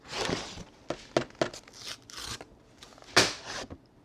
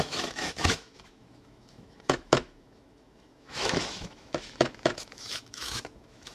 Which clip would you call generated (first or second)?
second